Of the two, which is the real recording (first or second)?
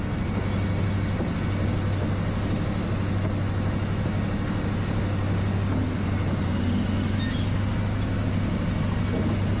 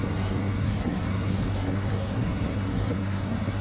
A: first